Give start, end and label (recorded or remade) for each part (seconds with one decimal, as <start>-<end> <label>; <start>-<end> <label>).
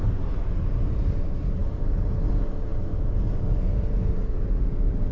0.0-1.6 recorded; 1.6-2.3 remade; 2.3-5.1 recorded